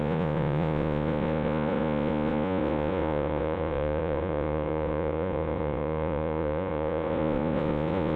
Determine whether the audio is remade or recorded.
remade